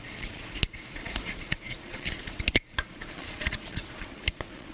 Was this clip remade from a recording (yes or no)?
yes